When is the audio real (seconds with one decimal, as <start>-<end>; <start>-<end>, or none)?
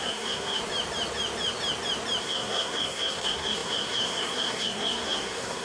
0.6-2.2